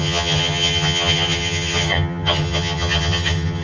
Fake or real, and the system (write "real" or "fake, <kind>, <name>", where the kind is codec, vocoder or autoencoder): fake, vocoder, HiFi-GAN